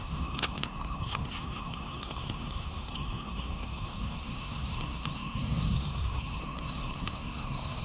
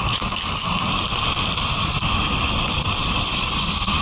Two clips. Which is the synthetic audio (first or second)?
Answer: first